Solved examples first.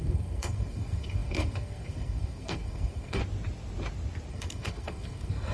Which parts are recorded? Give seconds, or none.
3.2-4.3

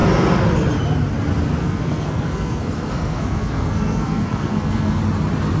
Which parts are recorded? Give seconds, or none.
0.0-1.6; 5.0-5.6

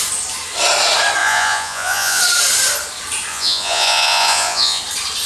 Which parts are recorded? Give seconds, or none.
0.0-1.2; 2.2-3.3; 4.8-5.3

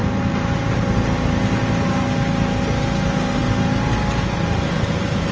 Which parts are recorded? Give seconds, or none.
0.0-5.3

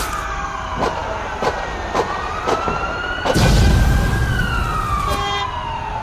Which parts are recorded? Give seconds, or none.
0.0-6.0